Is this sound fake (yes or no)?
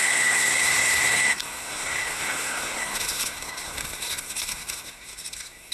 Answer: yes